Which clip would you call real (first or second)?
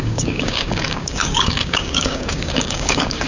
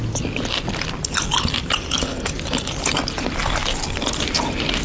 second